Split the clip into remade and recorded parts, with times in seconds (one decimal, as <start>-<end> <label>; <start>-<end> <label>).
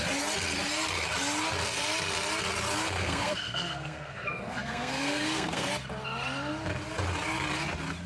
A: 0.0-3.0 recorded; 3.0-5.7 remade; 5.7-8.1 recorded